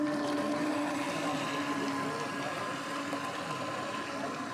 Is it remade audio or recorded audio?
recorded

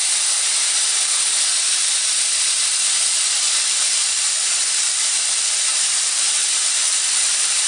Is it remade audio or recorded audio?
remade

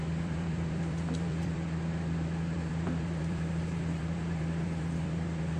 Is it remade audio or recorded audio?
remade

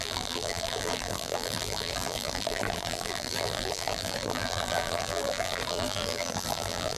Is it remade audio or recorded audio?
remade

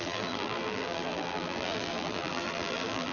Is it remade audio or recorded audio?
remade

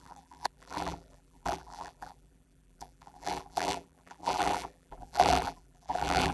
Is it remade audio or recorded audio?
remade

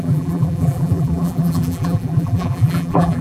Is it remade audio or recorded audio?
remade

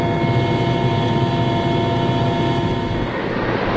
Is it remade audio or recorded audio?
recorded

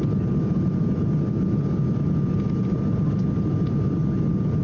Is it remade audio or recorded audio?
recorded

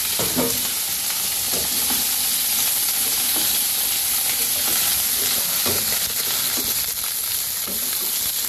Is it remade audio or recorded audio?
recorded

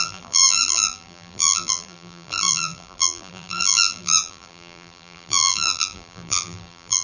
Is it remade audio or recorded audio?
remade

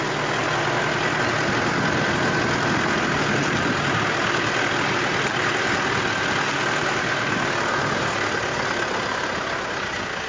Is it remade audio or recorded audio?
recorded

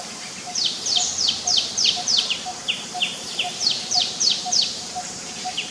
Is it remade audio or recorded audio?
remade